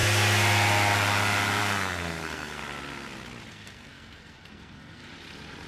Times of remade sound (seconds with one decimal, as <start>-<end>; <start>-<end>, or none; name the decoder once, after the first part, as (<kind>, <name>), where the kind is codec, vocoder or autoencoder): 1.6-2.6 (codec, SNAC); 3.5-5.0